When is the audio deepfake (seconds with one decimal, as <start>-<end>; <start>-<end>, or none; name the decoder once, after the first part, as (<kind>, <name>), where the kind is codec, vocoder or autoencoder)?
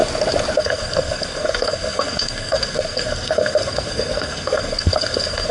0.6-5.5 (codec, SNAC)